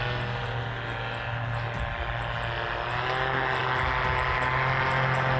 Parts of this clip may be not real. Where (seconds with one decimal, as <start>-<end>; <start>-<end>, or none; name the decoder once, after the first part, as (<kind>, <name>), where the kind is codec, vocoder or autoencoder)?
none